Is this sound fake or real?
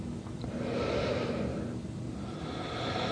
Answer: real